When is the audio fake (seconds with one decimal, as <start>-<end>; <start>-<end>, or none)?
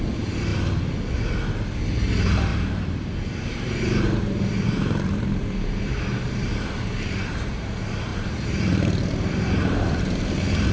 0.0-0.5; 1.8-10.7